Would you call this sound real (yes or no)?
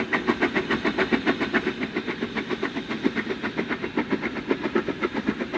yes